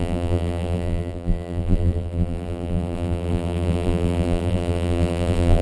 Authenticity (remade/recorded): remade